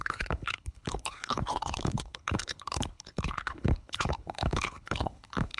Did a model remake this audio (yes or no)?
yes